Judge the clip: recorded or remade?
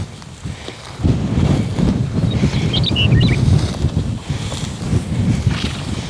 remade